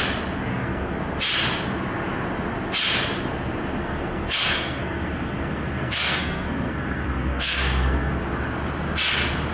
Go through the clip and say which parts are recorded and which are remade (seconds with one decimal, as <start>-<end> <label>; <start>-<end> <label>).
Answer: 0.0-0.5 recorded; 0.5-1.0 remade; 1.0-3.8 recorded; 3.8-8.2 remade; 8.2-9.5 recorded